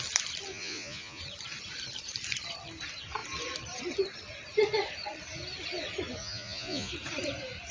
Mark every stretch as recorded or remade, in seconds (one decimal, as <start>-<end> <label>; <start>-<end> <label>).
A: 0.0-0.5 recorded; 0.5-1.2 remade; 1.2-6.2 recorded; 6.2-6.9 remade; 6.9-7.7 recorded